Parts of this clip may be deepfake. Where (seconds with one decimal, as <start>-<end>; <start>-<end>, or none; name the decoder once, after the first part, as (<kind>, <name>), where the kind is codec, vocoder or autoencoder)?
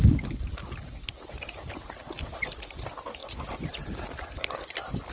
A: none